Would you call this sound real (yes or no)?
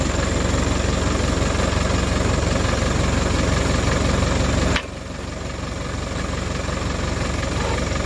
yes